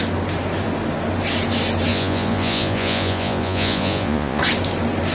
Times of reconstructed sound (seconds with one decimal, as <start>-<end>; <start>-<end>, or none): 1.9-4.4